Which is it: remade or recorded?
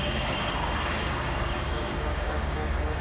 remade